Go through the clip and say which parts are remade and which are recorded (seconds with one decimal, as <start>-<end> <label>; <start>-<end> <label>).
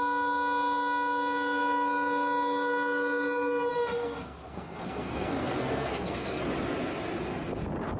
0.0-3.7 recorded; 3.7-6.4 remade; 6.4-8.0 recorded